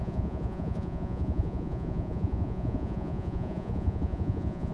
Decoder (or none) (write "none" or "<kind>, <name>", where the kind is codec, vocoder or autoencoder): vocoder, Vocos